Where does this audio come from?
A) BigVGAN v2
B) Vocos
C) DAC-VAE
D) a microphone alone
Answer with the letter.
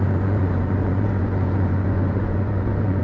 B